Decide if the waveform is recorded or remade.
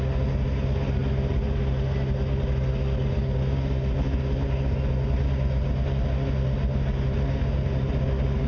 recorded